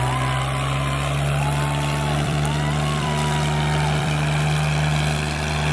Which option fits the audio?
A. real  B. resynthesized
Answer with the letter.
B